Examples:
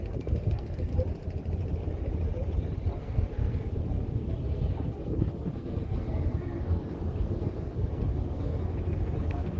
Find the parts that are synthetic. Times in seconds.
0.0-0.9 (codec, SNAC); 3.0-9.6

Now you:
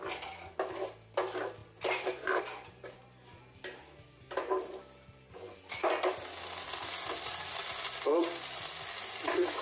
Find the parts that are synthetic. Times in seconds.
8.1-9.6 (vocoder, BigVGAN v2)

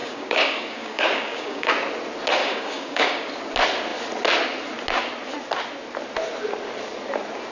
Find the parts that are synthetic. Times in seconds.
0.0-1.7 (codec, DAC); 2.4-3.3

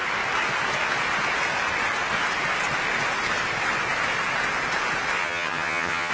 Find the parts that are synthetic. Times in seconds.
5.2-6.1 (vocoder, HiFi-GAN)

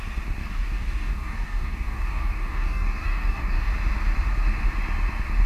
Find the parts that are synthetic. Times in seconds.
0.4-3.7 (codec, DAC)